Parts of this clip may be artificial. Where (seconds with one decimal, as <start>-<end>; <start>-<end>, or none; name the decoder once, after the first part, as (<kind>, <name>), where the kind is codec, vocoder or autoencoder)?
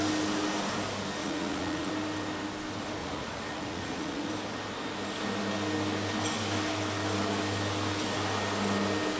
1.2-1.9 (vocoder, Vocos); 3.0-4.3